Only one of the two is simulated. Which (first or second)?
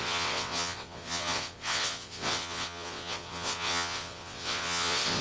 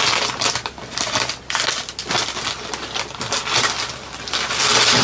first